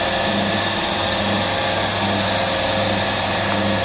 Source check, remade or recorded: recorded